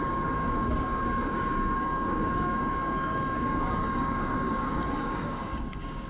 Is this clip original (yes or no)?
no